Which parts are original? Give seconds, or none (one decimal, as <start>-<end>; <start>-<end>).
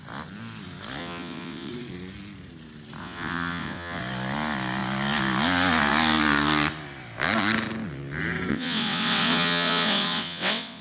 0.0-1.0; 1.7-3.0; 4.0-8.5